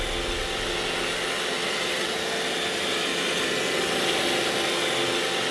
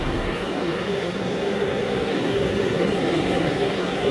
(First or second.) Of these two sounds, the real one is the first